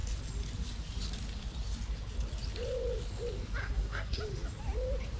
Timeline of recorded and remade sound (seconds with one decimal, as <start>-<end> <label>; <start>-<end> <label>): 0.0-3.6 recorded; 3.6-4.2 remade; 4.2-5.2 recorded